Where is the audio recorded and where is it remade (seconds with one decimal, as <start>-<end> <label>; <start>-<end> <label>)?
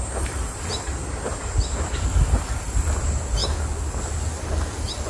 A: 0.0-3.4 remade; 3.4-5.1 recorded